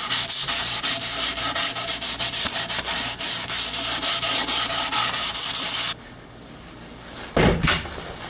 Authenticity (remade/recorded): recorded